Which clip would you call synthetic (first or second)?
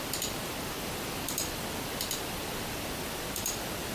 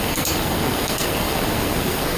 second